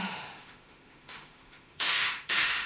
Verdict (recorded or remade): remade